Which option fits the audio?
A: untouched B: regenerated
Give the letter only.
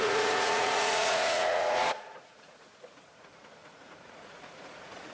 B